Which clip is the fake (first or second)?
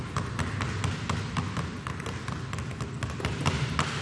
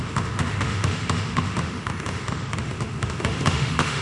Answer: second